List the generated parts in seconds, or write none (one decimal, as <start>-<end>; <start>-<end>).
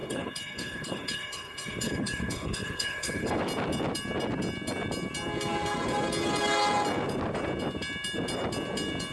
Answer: 0.0-3.4